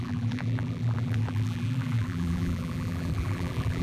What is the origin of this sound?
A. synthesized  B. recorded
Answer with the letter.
A